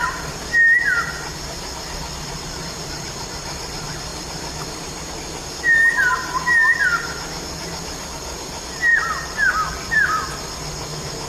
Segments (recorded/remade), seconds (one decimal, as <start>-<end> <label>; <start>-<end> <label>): 0.0-4.1 recorded; 4.1-5.1 remade; 5.1-8.9 recorded; 8.9-10.4 remade; 10.4-11.3 recorded